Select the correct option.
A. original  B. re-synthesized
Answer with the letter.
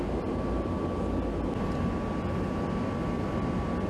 A